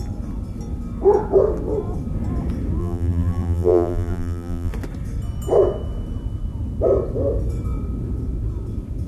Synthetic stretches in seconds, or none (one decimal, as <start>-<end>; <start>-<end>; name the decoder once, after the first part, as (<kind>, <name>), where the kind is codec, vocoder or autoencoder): 2.8-4.7 (vocoder, BigVGAN v2)